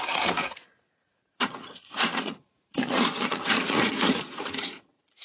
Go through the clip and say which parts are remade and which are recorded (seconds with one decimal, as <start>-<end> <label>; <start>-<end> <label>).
0.0-5.2 remade

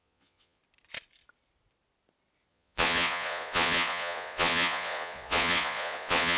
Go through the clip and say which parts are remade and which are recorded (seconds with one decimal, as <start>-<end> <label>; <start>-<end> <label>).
0.0-0.6 remade; 0.6-2.5 recorded; 2.5-6.4 remade

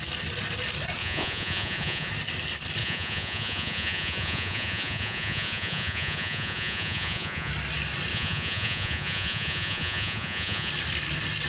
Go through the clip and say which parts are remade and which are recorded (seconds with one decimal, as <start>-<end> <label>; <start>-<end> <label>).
0.0-1.0 recorded; 1.0-2.1 remade; 2.1-2.8 recorded; 2.8-7.5 remade; 7.5-8.1 recorded; 8.1-10.7 remade; 10.7-11.5 recorded